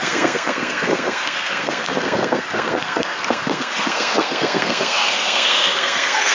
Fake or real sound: fake